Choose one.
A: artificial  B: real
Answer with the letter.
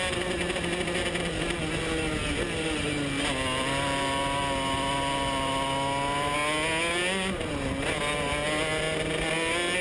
B